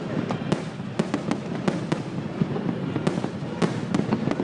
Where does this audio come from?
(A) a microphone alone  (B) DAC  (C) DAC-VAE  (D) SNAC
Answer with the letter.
A